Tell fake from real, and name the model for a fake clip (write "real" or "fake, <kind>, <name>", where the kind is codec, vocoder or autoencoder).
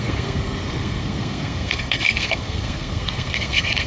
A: fake, codec, SNAC